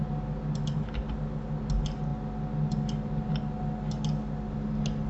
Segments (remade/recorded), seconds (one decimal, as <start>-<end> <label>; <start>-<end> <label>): 0.0-5.1 recorded